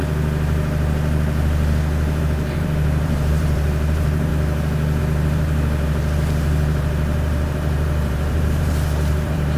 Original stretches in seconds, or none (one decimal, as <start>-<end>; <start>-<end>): 0.0-2.2; 4.3-5.0